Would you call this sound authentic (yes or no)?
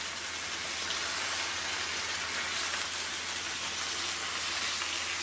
yes